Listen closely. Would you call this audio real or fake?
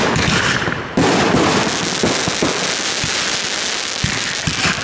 real